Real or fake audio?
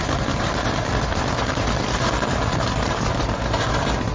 real